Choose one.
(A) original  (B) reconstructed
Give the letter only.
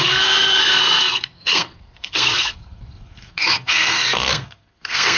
B